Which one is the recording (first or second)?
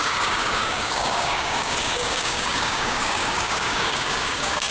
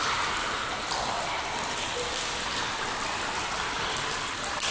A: second